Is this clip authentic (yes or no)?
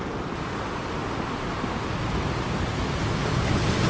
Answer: yes